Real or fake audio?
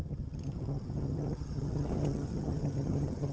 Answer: fake